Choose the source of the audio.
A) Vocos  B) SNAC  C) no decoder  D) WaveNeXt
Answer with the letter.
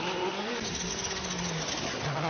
C